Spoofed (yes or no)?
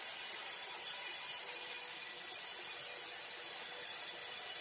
no